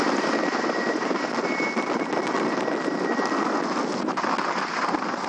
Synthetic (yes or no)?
no